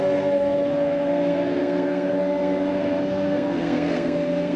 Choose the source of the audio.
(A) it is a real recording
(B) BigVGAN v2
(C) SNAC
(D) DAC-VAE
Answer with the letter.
C